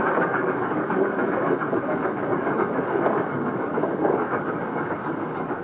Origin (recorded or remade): remade